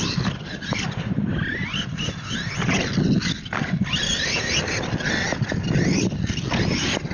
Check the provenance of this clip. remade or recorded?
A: recorded